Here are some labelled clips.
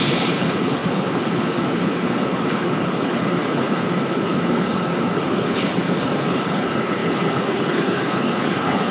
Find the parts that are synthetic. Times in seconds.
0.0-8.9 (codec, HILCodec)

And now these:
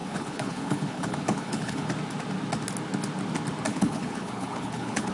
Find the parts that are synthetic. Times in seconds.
0.0-1.9 (codec, HILCodec); 3.7-5.1